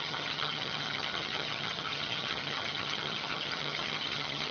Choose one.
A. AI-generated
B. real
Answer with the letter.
A